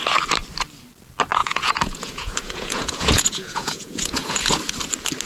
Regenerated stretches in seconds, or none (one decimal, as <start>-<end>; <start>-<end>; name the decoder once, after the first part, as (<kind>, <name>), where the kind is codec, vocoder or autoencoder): 1.4-4.6 (vocoder, Vocos)